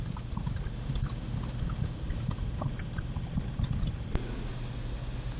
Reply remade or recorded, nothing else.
recorded